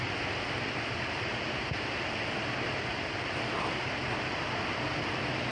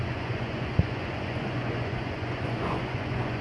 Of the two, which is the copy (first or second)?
second